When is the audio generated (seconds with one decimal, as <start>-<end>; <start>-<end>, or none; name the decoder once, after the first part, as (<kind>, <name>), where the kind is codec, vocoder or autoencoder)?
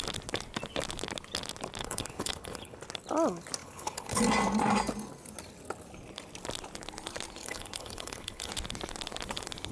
1.8-2.8 (codec, HILCodec); 3.6-4.2; 7.4-8.5